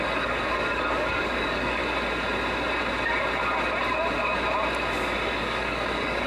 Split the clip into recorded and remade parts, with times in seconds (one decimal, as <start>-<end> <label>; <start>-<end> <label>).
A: 0.0-1.8 remade; 1.8-5.4 recorded; 5.4-6.3 remade